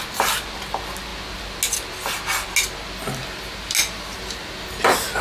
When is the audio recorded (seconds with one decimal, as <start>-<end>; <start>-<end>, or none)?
0.0-5.2